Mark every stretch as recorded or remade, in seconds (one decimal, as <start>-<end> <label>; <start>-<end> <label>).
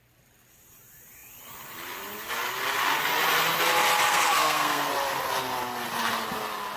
0.0-4.1 recorded; 4.1-4.9 remade; 4.9-6.8 recorded